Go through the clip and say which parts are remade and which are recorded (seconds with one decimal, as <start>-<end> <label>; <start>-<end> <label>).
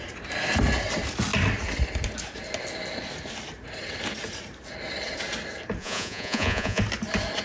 0.0-5.8 recorded; 5.8-6.8 remade; 6.8-7.4 recorded